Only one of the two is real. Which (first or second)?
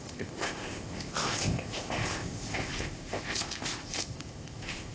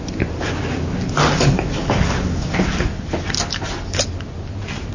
second